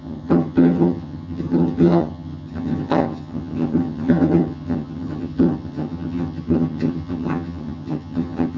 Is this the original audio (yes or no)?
no